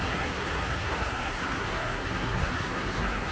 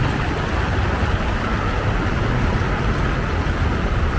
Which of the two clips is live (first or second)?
second